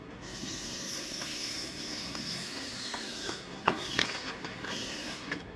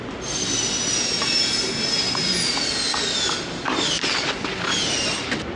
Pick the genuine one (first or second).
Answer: second